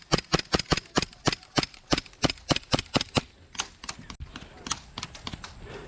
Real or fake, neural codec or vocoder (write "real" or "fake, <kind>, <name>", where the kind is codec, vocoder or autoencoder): real